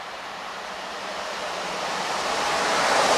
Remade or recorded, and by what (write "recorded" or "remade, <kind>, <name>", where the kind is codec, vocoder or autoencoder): remade, vocoder, BigVGAN v2